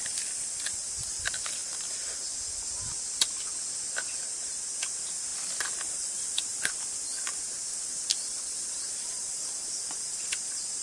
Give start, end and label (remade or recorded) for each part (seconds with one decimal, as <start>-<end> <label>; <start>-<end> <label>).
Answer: 0.0-10.8 recorded